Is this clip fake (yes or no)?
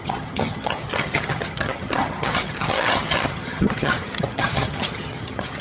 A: yes